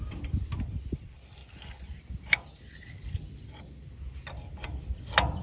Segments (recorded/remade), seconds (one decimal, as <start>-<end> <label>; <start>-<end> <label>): 0.0-5.4 recorded